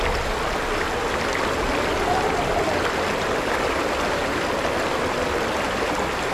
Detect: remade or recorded recorded